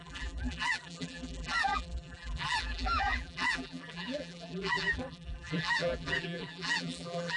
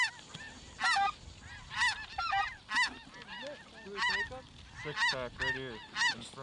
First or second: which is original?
second